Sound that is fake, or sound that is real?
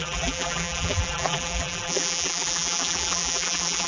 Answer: fake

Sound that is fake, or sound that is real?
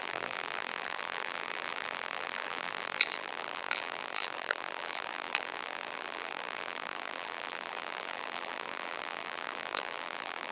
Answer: fake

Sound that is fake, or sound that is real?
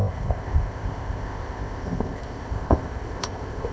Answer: fake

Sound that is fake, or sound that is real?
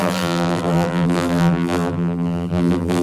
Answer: fake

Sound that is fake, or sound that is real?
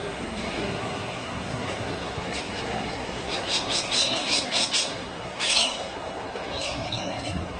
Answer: fake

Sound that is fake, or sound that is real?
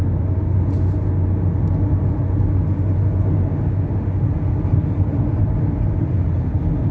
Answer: real